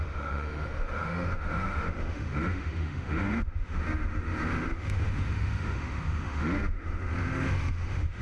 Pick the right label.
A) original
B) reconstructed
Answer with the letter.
B